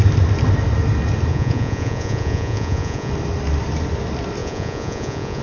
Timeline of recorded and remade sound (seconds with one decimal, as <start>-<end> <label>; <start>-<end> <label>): 0.0-1.3 recorded; 1.3-3.1 remade; 3.1-4.4 recorded; 4.4-5.4 remade